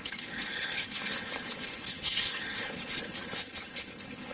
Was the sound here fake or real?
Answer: fake